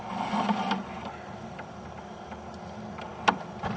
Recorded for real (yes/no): yes